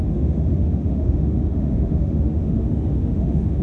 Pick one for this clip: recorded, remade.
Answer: remade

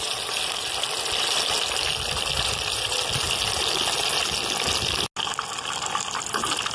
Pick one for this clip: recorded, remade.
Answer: recorded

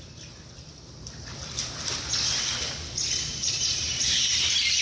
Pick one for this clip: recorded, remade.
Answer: recorded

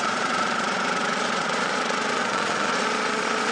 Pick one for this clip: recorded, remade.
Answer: remade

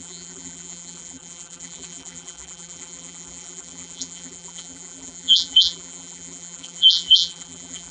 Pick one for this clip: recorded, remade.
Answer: remade